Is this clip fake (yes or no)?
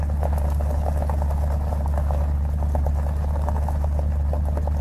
no